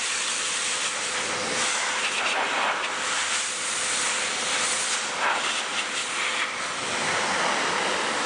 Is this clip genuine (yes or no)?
no